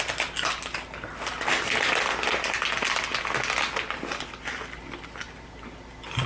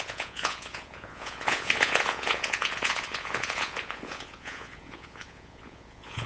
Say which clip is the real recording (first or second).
first